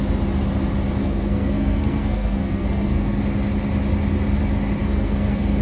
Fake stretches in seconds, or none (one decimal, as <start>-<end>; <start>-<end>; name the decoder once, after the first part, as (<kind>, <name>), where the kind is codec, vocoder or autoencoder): 1.0-3.2 (codec, SNAC); 4.8-5.6